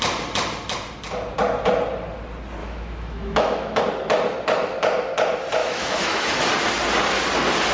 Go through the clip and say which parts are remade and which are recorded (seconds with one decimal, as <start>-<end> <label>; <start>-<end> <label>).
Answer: 0.0-2.6 recorded; 2.6-3.8 remade; 3.8-5.6 recorded; 5.6-6.4 remade; 6.4-7.7 recorded